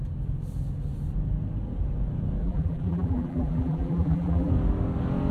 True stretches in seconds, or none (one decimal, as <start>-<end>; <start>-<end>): 0.0-2.4; 4.5-5.3